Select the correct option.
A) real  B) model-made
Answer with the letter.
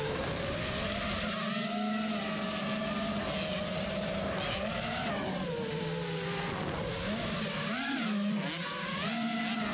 A